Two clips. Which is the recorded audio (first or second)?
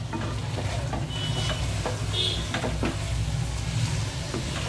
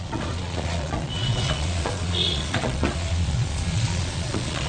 first